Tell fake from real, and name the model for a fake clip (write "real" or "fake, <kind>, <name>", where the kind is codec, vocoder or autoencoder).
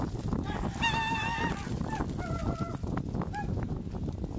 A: real